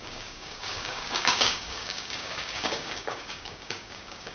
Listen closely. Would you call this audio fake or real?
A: fake